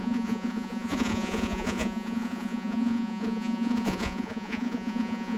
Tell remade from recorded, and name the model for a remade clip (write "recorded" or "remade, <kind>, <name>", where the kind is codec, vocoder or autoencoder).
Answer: remade, vocoder, Vocos